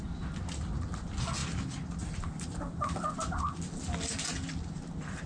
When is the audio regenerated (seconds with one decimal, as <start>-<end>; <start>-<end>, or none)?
none